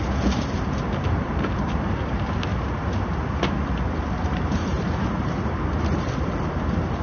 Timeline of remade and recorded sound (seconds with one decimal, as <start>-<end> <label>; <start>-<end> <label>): 0.0-2.5 remade; 2.5-4.0 recorded; 4.0-7.0 remade